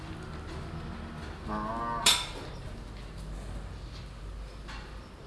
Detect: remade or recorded recorded